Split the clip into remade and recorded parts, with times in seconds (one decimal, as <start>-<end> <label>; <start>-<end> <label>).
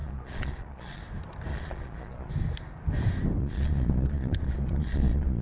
0.0-1.0 remade; 1.0-1.5 recorded; 1.5-2.3 remade; 2.3-3.4 recorded; 3.4-5.4 remade